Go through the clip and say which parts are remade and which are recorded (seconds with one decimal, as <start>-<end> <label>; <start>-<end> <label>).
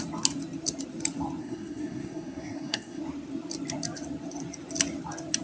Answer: 0.0-1.4 recorded; 1.4-3.0 remade; 3.0-5.4 recorded